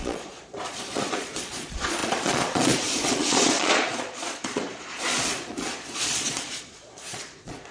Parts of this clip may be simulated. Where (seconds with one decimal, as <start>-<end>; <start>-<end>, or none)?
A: 0.0-7.7